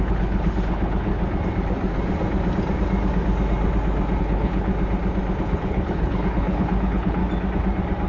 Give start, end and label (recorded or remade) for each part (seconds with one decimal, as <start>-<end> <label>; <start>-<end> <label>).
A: 0.0-1.1 remade; 1.1-4.2 recorded; 4.2-4.7 remade; 4.7-5.4 recorded; 5.4-7.2 remade; 7.2-8.1 recorded